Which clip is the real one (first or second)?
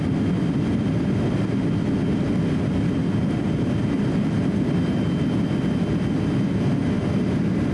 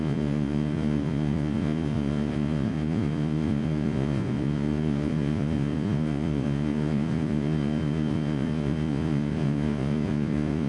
first